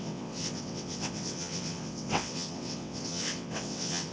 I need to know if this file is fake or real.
fake